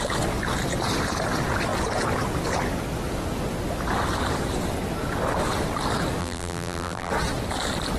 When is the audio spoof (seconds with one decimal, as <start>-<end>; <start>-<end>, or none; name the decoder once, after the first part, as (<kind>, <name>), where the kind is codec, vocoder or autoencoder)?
6.2-7.1 (vocoder, BigVGAN v2)